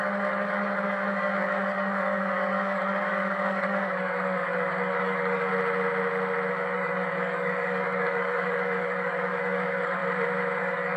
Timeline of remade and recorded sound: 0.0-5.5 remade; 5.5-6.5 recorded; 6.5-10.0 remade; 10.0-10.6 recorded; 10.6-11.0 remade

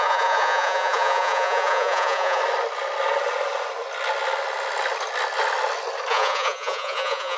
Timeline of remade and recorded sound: 0.0-2.4 remade; 2.4-6.1 recorded; 6.1-7.4 remade

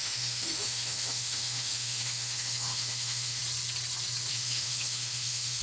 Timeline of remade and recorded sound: 0.0-3.4 remade; 3.4-4.3 recorded; 4.3-5.6 remade

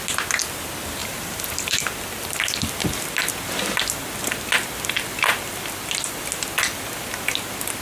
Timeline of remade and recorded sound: 0.0-1.0 recorded; 1.0-1.8 remade; 1.8-7.8 recorded

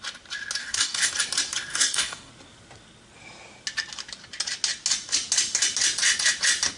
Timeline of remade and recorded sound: 0.0-0.6 recorded; 0.6-1.1 remade; 1.1-1.7 recorded; 1.7-2.3 remade; 2.3-6.8 recorded

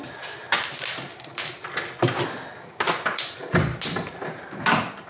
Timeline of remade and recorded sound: 0.0-5.1 recorded

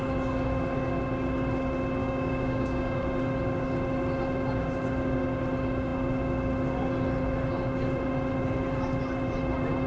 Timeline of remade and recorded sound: 0.0-2.0 recorded; 2.0-3.0 remade; 3.0-9.9 recorded

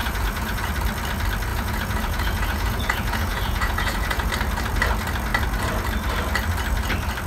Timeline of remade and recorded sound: 0.0-0.7 remade; 0.7-1.5 recorded; 1.5-4.3 remade; 4.3-7.3 recorded